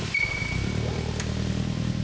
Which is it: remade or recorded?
remade